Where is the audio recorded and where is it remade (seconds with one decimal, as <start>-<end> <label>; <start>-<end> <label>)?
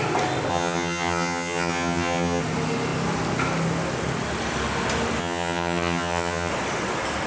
0.0-0.5 recorded; 0.5-2.4 remade; 2.4-5.2 recorded; 5.2-6.5 remade; 6.5-7.3 recorded